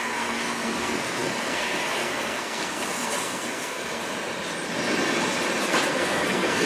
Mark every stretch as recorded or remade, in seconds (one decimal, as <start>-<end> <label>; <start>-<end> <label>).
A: 0.0-4.0 remade; 4.0-5.6 recorded; 5.6-6.7 remade